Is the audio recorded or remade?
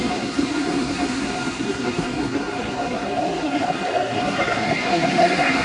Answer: remade